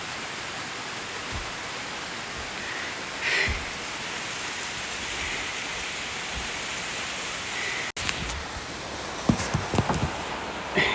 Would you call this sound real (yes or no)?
yes